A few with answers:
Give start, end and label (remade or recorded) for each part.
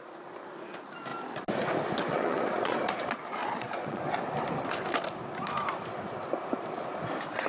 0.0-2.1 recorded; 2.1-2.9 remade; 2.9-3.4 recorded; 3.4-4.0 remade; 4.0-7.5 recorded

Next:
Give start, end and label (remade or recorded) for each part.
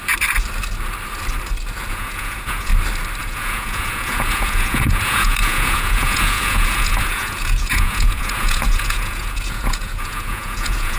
0.0-1.9 recorded; 1.9-2.7 remade; 2.7-3.2 recorded; 3.2-11.0 remade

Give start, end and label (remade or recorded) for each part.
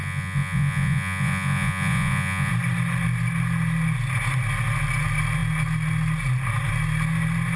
0.0-2.5 remade; 2.5-7.6 recorded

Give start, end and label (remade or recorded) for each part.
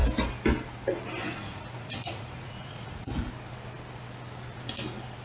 0.0-1.2 recorded; 1.2-3.1 remade; 3.1-5.2 recorded